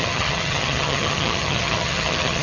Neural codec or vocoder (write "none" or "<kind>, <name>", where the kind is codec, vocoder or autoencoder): vocoder, HiFi-GAN